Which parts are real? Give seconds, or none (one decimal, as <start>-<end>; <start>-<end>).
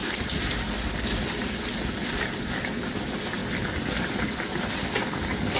1.6-3.4; 4.8-5.6